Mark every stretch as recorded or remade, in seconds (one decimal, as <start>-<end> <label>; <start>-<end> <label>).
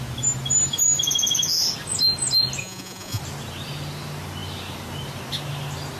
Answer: 0.0-2.6 recorded; 2.6-3.2 remade; 3.2-6.0 recorded